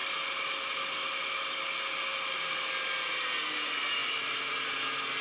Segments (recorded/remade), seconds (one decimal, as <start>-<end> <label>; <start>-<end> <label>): 0.0-1.6 remade; 1.6-2.1 recorded; 2.1-3.2 remade; 3.2-4.0 recorded; 4.0-4.5 remade; 4.5-5.2 recorded